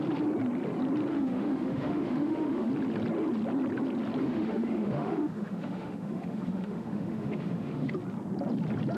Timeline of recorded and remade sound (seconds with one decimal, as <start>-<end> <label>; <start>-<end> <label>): 0.0-1.1 recorded; 1.1-2.7 remade; 2.7-4.2 recorded; 4.2-7.9 remade; 7.9-9.0 recorded